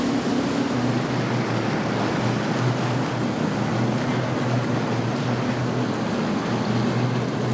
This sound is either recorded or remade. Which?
recorded